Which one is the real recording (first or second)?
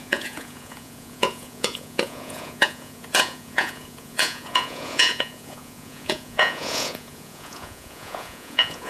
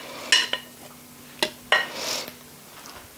second